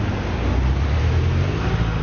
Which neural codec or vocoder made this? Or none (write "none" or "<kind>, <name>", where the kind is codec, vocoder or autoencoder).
none